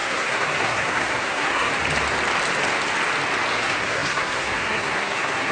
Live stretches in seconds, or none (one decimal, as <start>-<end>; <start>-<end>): 1.7-3.5